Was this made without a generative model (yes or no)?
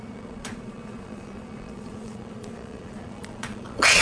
no